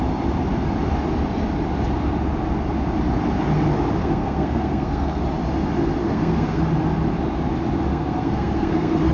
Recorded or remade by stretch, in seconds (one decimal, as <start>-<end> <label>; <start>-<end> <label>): 0.0-4.0 recorded; 4.0-5.2 remade; 5.2-6.0 recorded; 6.0-6.6 remade; 6.6-7.9 recorded; 7.9-9.1 remade